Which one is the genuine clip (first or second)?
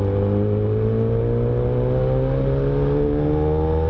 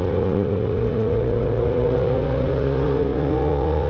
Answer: first